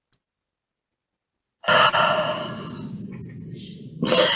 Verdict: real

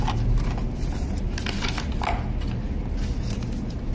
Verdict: real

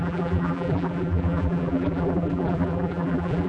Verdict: fake